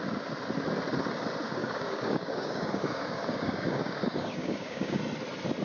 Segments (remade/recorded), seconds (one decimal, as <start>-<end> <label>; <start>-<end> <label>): 0.0-1.6 recorded; 1.6-5.0 remade; 5.0-5.6 recorded